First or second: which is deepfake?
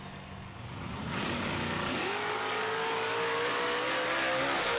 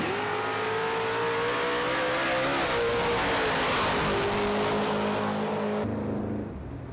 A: first